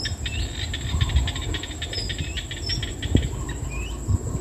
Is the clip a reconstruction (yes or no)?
no